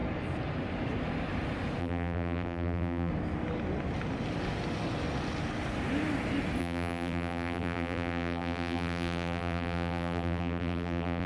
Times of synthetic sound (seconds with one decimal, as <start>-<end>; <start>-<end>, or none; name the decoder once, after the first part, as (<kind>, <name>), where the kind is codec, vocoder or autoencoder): 1.8-3.1 (vocoder, BigVGAN v2); 6.6-11.3